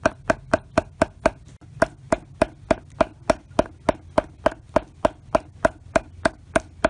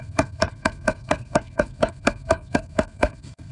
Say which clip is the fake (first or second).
second